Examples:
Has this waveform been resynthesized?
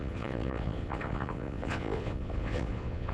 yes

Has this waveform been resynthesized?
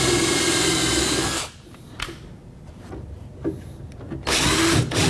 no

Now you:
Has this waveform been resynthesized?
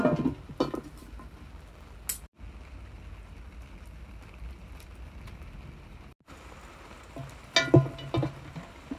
no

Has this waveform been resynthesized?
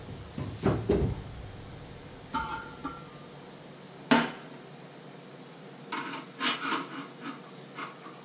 no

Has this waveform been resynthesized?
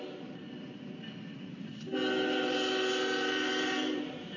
yes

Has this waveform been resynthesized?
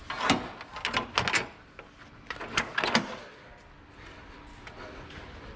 no